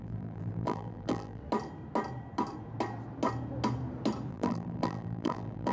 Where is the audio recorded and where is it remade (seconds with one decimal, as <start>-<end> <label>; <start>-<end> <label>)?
0.0-1.4 remade; 1.4-4.3 recorded; 4.3-5.7 remade